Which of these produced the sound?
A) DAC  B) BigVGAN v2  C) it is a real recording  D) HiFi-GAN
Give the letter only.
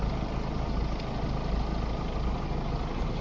C